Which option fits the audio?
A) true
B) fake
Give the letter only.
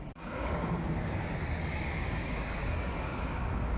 B